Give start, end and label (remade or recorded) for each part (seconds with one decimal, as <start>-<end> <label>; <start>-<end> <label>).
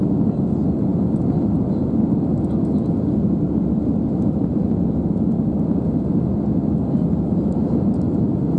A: 0.0-8.6 recorded